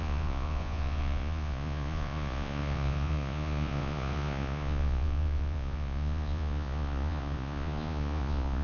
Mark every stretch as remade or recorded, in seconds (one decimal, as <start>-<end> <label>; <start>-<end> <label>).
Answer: 0.0-8.6 remade